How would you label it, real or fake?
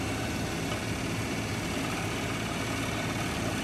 real